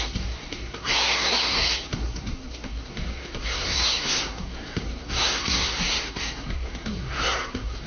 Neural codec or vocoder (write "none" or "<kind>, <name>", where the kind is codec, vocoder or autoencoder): codec, SNAC